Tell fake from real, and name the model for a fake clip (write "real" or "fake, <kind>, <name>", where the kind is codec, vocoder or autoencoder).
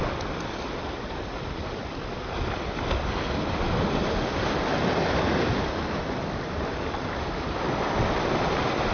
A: real